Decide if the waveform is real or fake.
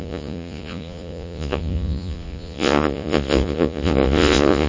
fake